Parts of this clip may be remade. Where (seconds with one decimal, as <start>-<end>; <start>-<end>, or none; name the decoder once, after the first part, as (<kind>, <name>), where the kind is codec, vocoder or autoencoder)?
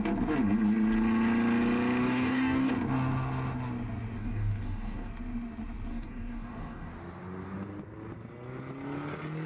2.0-2.7 (codec, DAC); 4.2-5.1; 5.9-6.9